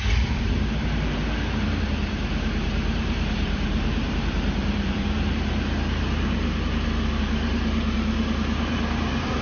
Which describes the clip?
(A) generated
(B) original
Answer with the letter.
A